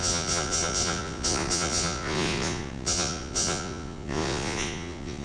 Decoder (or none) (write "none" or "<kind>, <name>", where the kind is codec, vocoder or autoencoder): vocoder, Vocos